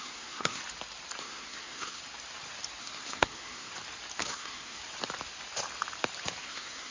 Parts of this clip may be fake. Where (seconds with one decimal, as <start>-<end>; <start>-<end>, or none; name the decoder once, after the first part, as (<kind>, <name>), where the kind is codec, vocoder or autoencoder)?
0.0-0.6 (codec, SNAC); 1.2-2.0; 2.8-3.7; 4.2-4.8; 6.4-6.9